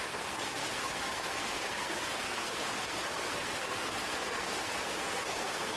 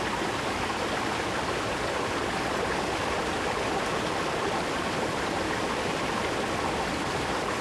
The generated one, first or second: first